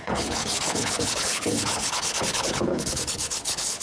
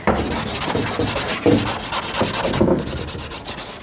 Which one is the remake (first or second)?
first